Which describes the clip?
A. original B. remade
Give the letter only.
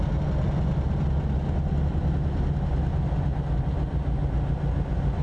A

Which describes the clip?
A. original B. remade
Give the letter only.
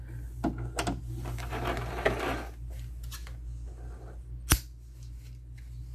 A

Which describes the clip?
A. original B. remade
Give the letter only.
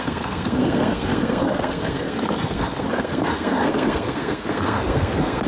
B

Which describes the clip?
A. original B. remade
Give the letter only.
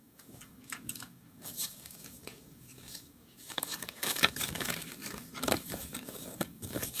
B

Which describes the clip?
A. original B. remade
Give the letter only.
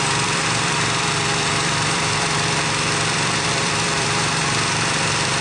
B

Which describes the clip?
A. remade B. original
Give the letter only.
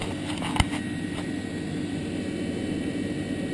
B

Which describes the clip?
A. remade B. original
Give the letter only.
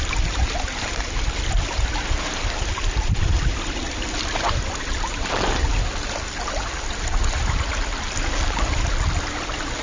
B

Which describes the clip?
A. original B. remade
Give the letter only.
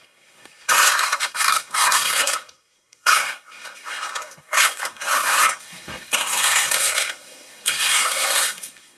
B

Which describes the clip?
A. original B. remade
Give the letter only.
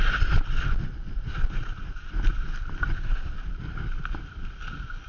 A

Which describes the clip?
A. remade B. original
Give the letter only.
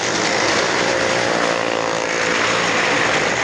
B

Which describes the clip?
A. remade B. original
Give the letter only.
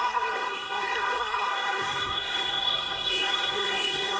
A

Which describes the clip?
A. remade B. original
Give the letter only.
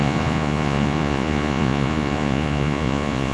A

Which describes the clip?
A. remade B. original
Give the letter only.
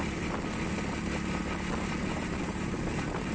B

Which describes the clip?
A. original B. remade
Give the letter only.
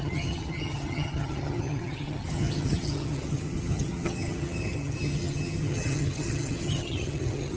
B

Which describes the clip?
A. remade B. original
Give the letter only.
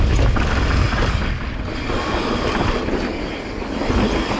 B